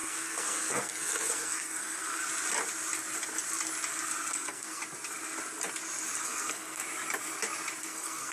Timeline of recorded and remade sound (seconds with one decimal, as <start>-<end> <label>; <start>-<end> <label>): 0.0-2.2 remade; 2.2-4.3 recorded; 4.3-4.8 remade; 4.8-6.2 recorded; 6.2-6.8 remade; 6.8-7.8 recorded; 7.8-8.3 remade